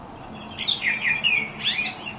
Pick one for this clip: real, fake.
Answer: real